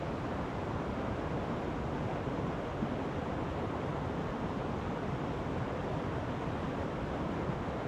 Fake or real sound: real